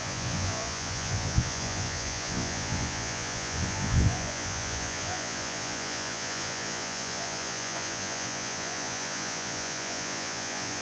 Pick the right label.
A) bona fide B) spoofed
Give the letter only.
B